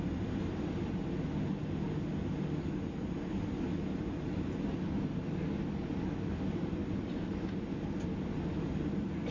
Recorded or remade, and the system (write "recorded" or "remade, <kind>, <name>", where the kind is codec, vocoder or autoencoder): recorded